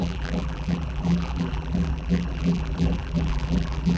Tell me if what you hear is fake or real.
fake